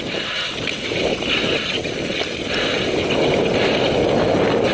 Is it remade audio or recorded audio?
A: recorded